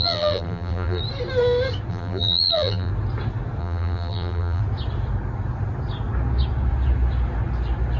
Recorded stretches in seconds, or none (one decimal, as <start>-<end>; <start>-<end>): 1.0-1.9; 2.9-3.6; 4.6-8.0